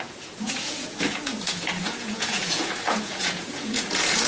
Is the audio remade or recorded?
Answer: remade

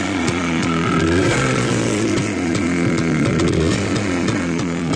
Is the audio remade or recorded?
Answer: remade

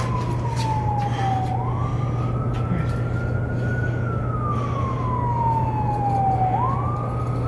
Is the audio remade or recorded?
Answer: recorded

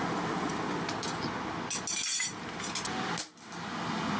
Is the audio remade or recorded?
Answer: recorded